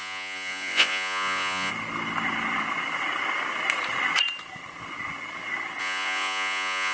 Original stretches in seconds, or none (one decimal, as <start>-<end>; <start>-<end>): 1.7-5.8